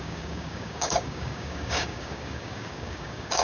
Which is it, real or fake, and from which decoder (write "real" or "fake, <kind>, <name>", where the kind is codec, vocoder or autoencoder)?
fake, codec, DAC